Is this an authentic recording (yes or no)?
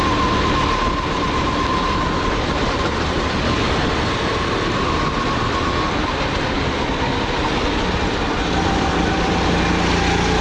yes